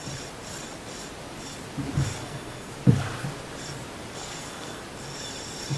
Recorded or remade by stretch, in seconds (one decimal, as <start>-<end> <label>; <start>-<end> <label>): 0.0-2.2 recorded; 2.2-2.7 remade; 2.7-4.2 recorded; 4.2-4.8 remade; 4.8-5.8 recorded

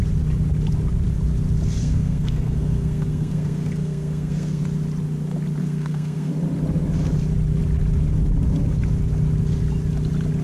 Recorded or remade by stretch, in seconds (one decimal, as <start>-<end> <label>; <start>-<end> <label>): 0.0-1.8 recorded; 1.8-4.6 remade; 4.6-5.6 recorded; 5.6-6.3 remade; 6.3-10.4 recorded